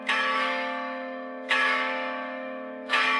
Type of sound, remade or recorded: remade